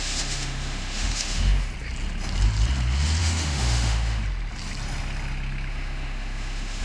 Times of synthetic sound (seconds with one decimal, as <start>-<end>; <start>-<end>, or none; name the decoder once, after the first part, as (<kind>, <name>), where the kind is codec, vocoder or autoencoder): 0.0-1.7 (autoencoder, DAC-VAE); 3.2-4.2; 5.7-6.8